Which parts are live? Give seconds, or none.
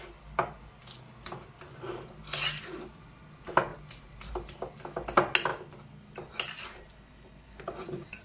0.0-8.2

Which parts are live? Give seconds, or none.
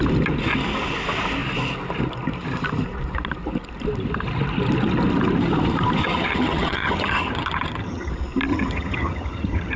0.0-6.0; 8.1-8.5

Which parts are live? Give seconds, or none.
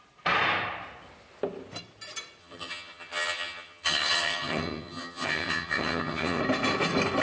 0.0-2.4; 6.4-7.2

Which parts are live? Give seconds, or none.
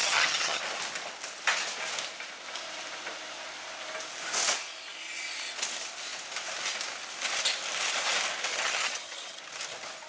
0.6-8.5; 9.4-10.1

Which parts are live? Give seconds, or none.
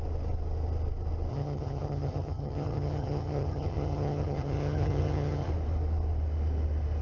0.0-1.3; 5.5-7.0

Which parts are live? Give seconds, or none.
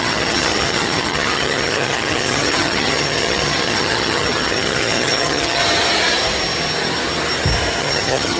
5.6-7.8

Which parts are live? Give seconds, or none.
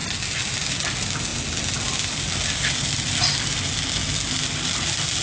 0.0-5.2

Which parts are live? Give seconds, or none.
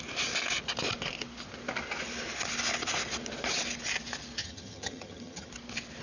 0.0-4.4; 5.5-6.0